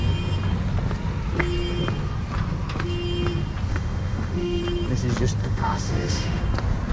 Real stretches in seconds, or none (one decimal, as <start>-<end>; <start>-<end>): 0.0-3.7; 4.6-5.4; 6.4-6.9